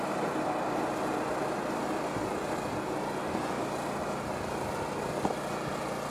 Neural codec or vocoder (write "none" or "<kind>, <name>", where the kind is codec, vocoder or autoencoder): none